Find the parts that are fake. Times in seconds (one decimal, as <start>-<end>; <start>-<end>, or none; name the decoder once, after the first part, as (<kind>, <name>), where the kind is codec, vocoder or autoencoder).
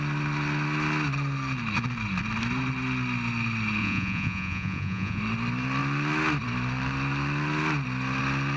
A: 3.8-5.2 (vocoder, Vocos)